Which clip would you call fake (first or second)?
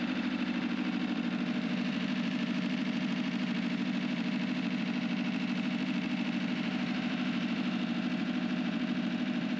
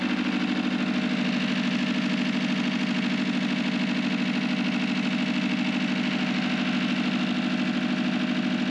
first